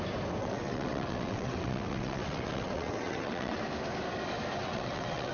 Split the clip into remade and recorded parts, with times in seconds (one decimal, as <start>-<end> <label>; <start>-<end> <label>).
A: 0.0-0.4 recorded; 0.4-3.6 remade; 3.6-4.6 recorded; 4.6-5.3 remade